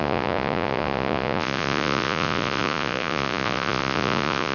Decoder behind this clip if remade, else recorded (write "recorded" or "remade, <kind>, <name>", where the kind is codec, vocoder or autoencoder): remade, vocoder, Vocos